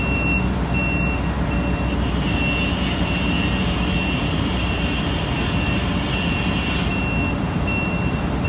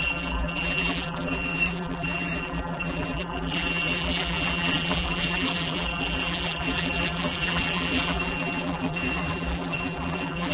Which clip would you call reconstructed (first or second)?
second